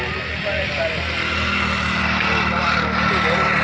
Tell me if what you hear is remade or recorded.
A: recorded